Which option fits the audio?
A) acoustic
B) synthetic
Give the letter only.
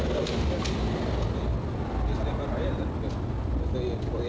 A